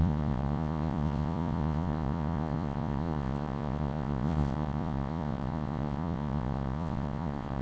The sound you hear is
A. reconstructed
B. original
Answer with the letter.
A